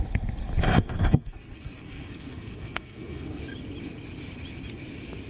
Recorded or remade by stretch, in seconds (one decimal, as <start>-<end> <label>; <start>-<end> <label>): 0.0-0.7 recorded; 0.7-3.4 remade; 3.4-5.3 recorded